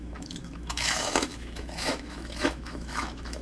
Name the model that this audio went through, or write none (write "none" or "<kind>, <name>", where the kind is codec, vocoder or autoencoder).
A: autoencoder, DAC-VAE